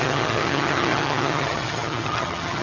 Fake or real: fake